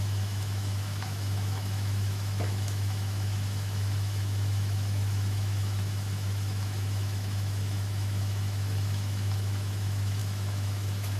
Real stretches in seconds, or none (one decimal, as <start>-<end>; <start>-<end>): none